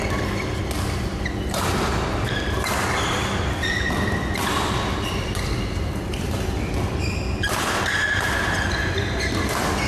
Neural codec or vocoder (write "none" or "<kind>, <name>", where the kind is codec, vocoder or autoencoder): none